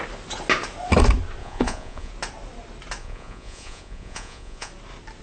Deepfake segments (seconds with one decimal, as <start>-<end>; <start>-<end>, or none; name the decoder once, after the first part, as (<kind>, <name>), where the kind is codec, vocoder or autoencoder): 1.4-2.1 (vocoder, Vocos); 3.0-4.7